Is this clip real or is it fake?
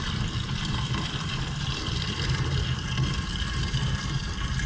real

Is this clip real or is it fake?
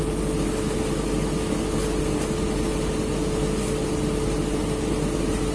real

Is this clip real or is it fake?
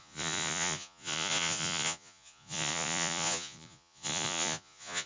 fake